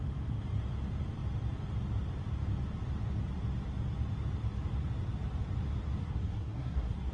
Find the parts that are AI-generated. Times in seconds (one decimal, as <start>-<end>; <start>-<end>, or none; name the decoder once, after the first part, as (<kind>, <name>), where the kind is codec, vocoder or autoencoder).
6.0-7.1 (codec, SNAC)